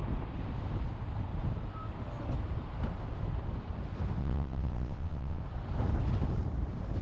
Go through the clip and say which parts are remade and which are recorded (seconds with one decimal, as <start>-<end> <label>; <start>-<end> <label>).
0.0-4.2 recorded; 4.2-5.4 remade; 5.4-7.0 recorded